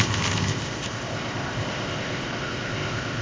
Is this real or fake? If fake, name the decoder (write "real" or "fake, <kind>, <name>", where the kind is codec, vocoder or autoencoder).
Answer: fake, codec, ZipCodec